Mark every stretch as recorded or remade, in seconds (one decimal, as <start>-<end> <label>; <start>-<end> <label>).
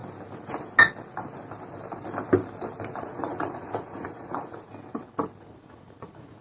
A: 0.0-3.0 recorded; 3.0-4.7 remade; 4.7-5.4 recorded; 5.4-6.4 remade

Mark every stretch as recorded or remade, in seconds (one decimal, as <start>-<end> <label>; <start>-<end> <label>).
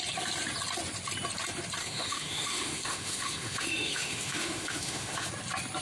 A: 0.0-1.8 recorded; 1.8-5.3 remade; 5.3-5.8 recorded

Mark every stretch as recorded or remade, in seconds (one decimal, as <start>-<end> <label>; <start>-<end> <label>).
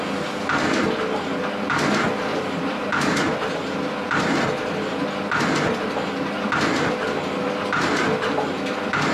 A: 0.0-2.3 recorded; 2.3-3.5 remade; 3.5-9.1 recorded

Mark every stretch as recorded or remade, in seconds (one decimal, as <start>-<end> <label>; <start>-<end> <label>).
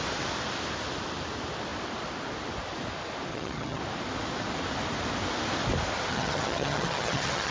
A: 0.0-3.3 recorded; 3.3-3.8 remade; 3.8-6.1 recorded; 6.1-7.5 remade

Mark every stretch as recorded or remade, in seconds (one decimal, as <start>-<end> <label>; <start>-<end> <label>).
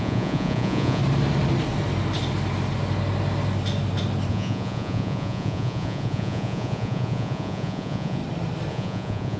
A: 0.0-1.0 remade; 1.0-4.3 recorded; 4.3-8.2 remade; 8.2-8.7 recorded; 8.7-9.4 remade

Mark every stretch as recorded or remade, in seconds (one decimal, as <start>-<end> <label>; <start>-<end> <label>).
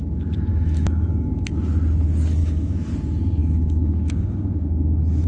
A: 0.0-0.5 recorded; 0.5-1.6 remade; 1.6-2.4 recorded; 2.4-2.9 remade; 2.9-3.4 recorded; 3.4-5.3 remade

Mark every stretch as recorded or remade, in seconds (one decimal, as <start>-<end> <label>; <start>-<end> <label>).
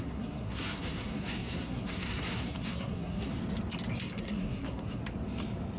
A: 0.0-3.3 remade; 3.3-4.0 recorded; 4.0-5.0 remade; 5.0-5.8 recorded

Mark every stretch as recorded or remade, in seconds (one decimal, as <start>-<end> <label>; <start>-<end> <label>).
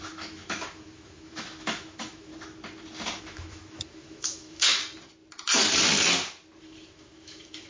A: 0.0-2.3 remade; 2.3-3.2 recorded; 3.2-4.8 remade; 4.8-6.6 recorded; 6.6-7.7 remade